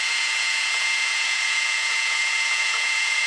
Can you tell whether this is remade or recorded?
remade